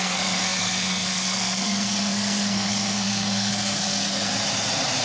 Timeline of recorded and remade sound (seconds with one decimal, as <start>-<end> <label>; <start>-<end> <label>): 0.0-4.3 remade; 4.3-5.0 recorded